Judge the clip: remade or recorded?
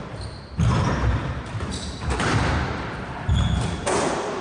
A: remade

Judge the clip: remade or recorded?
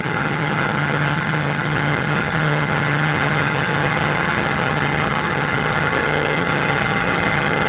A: remade